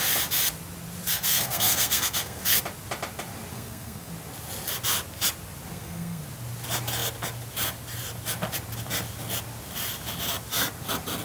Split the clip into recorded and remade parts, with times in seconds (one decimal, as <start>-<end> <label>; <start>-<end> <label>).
0.0-1.1 recorded; 1.1-2.6 remade; 2.6-3.5 recorded; 3.5-4.1 remade; 4.1-5.7 recorded; 5.7-6.2 remade; 6.2-11.2 recorded